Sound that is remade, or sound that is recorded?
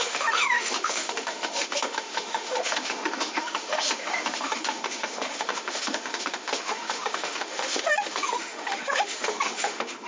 remade